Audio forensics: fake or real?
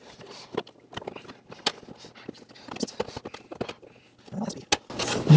real